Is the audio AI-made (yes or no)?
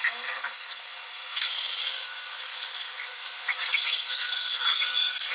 yes